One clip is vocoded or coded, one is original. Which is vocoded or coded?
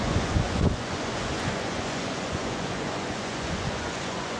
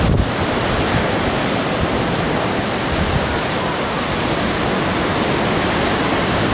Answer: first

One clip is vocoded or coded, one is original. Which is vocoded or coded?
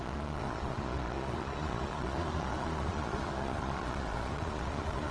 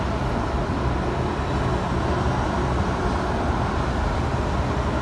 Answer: first